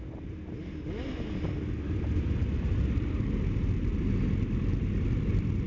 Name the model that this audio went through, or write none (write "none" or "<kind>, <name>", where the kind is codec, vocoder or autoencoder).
none